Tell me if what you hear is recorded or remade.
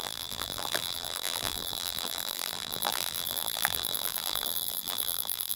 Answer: remade